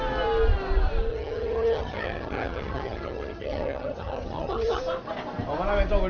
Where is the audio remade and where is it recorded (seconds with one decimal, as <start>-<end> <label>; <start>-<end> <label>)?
0.0-1.1 recorded; 1.1-4.8 remade; 4.8-6.1 recorded